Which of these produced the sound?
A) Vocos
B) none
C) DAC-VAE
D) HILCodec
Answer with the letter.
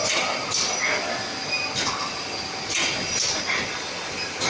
B